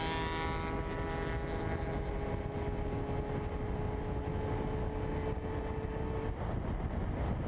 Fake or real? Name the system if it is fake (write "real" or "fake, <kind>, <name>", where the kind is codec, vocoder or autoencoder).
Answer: real